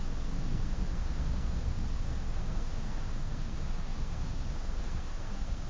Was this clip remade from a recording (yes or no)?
yes